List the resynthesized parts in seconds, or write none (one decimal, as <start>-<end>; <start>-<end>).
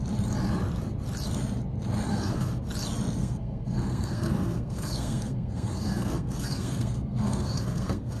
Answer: 2.1-2.6; 3.2-8.2